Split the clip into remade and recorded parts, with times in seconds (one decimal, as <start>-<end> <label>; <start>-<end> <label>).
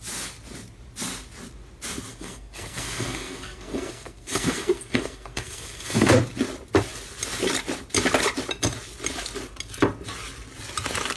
0.0-2.1 recorded; 2.1-6.2 remade; 6.2-11.2 recorded